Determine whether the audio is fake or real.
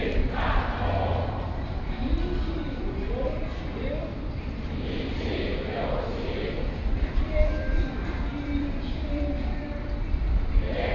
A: fake